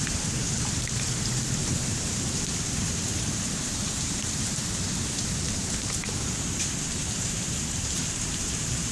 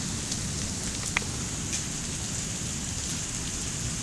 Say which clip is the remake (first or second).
first